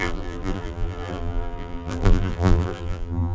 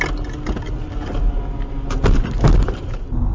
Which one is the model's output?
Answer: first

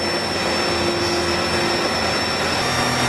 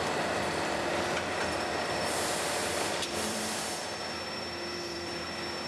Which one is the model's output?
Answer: second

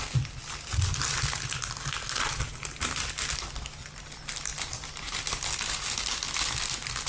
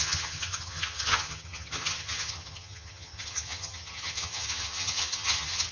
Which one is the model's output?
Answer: second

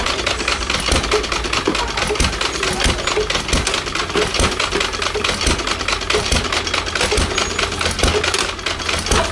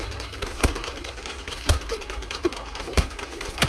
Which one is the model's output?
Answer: second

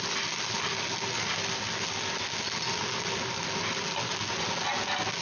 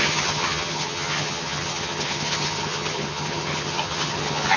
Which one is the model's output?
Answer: second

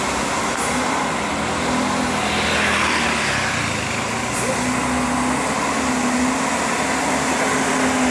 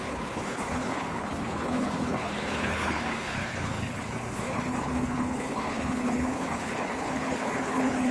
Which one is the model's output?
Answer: second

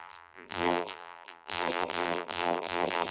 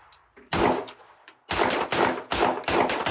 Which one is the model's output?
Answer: first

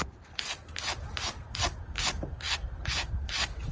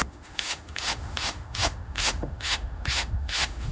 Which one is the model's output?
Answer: second